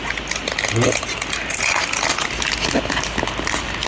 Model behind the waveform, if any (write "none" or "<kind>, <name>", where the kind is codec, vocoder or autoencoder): none